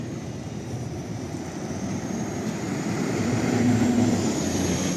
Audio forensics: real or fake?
fake